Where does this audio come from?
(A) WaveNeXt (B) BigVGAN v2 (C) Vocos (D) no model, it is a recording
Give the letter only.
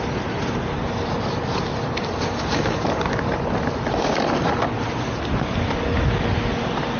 D